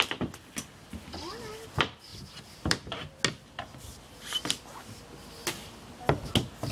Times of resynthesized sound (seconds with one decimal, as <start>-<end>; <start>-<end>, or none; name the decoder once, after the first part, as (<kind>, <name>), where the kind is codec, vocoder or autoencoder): 2.1-3.2 (vocoder, BigVGAN v2)